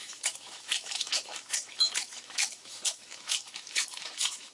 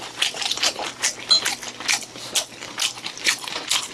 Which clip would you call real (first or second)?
second